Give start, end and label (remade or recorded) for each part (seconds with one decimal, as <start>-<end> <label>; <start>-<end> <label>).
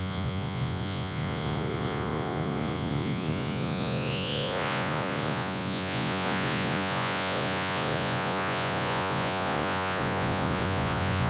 0.0-11.3 remade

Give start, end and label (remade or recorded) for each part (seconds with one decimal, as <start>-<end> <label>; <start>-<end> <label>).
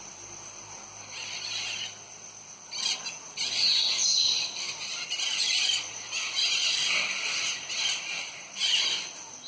0.0-9.5 recorded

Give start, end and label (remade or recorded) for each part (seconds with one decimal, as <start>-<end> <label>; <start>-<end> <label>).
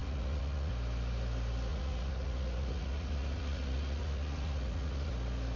0.0-0.7 remade; 0.7-1.7 recorded; 1.7-5.1 remade; 5.1-5.6 recorded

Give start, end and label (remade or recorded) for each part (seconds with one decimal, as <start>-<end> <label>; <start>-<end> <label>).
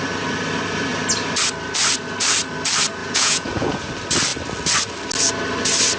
0.0-3.0 recorded; 3.0-3.9 remade; 3.9-6.0 recorded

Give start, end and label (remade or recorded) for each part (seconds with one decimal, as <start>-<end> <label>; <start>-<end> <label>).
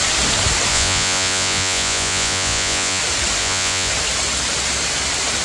0.0-0.7 recorded; 0.7-3.0 remade; 3.0-3.4 recorded; 3.4-3.9 remade; 3.9-5.4 recorded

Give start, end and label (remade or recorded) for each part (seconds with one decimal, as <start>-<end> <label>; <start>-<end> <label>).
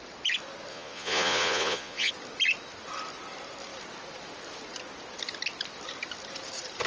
0.0-0.7 recorded; 0.7-2.1 remade; 2.1-6.9 recorded